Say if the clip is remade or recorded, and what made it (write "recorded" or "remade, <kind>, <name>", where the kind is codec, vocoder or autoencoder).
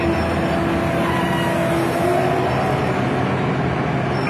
recorded